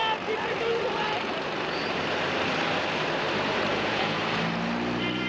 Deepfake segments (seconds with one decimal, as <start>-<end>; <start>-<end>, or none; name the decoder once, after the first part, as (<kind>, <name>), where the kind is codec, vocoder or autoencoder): 3.7-4.2 (vocoder, Vocos)